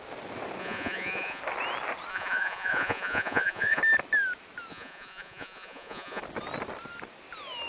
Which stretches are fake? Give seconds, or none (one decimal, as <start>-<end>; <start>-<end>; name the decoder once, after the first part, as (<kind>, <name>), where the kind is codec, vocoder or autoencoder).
0.6-1.4 (vocoder, Vocos); 2.1-3.8; 4.7-6.2